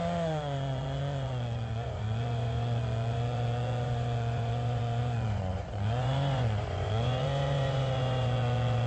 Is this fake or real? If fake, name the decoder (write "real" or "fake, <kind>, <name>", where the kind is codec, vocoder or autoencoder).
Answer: fake, vocoder, Vocos